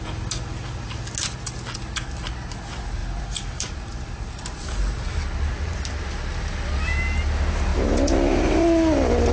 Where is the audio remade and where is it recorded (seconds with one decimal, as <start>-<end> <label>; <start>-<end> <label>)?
0.0-3.0 recorded; 3.0-6.0 remade; 6.0-9.3 recorded